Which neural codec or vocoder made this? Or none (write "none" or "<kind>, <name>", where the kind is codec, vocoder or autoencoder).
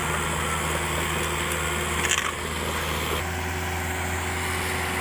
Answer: none